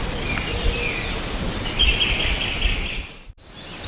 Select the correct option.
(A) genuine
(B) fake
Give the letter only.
A